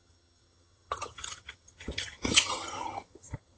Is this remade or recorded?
remade